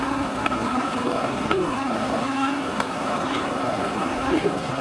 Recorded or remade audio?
remade